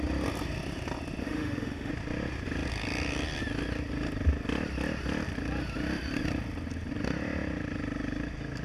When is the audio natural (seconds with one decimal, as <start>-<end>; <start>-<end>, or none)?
0.0-1.2; 1.9-8.6